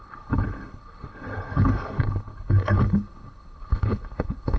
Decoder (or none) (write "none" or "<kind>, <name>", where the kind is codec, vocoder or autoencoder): codec, HILCodec